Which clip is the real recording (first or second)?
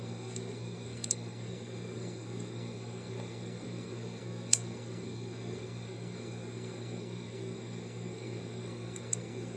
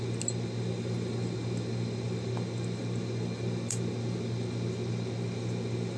second